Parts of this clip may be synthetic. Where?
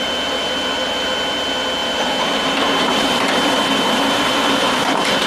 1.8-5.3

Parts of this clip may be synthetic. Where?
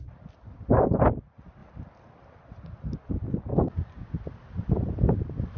3.5-4.1